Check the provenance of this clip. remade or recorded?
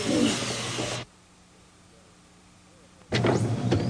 recorded